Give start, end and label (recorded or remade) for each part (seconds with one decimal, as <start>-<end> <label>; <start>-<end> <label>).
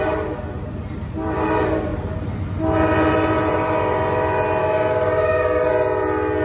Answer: 0.0-4.6 recorded; 4.6-5.7 remade; 5.7-6.4 recorded